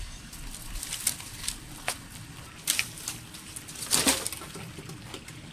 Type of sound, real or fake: real